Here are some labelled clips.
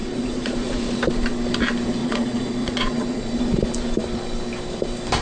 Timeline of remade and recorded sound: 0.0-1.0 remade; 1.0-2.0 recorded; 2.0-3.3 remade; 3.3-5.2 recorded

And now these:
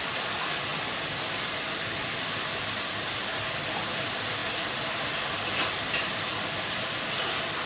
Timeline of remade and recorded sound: 0.0-0.7 remade; 0.7-1.9 recorded; 1.9-4.4 remade; 4.4-5.3 recorded; 5.3-7.7 remade

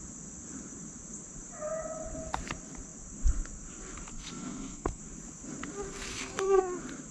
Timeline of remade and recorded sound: 0.0-4.1 recorded; 4.1-5.0 remade; 5.0-6.1 recorded; 6.1-6.6 remade; 6.6-7.1 recorded

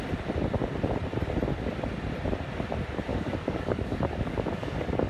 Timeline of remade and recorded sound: 0.0-3.1 recorded; 3.1-5.1 remade